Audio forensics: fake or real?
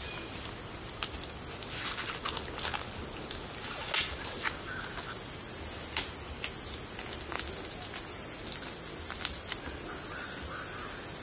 real